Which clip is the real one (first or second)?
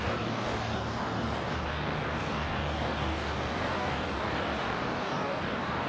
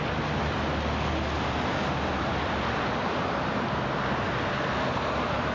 second